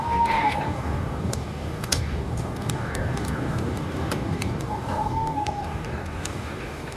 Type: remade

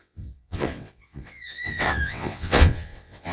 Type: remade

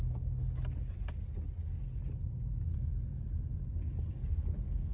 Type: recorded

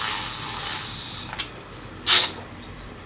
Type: recorded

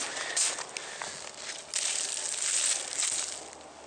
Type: recorded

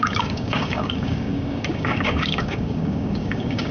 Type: remade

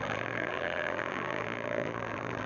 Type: remade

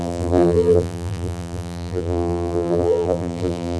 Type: remade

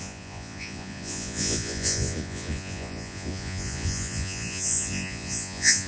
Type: remade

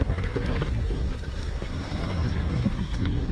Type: remade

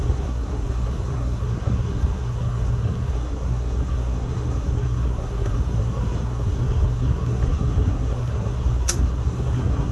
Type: remade